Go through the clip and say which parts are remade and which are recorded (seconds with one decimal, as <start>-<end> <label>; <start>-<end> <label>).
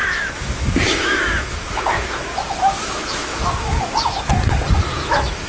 0.0-4.3 remade; 4.3-4.9 recorded; 4.9-5.5 remade